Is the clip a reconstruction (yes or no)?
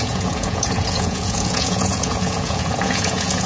yes